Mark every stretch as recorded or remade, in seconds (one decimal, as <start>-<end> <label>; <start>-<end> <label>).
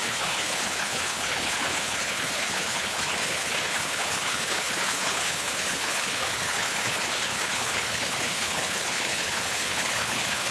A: 0.0-10.5 remade